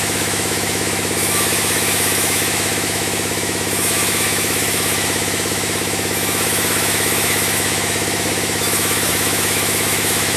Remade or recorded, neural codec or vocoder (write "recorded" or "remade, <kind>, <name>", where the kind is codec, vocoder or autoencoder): remade, autoencoder, DAC-VAE